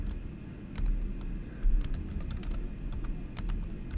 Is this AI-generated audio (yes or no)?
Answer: no